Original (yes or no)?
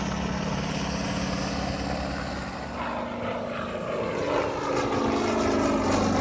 yes